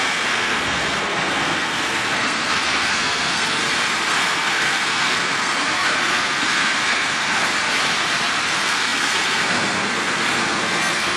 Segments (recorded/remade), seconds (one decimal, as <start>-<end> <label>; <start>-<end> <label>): 0.0-3.6 remade; 3.6-4.1 recorded; 4.1-7.5 remade; 7.5-8.4 recorded; 8.4-11.2 remade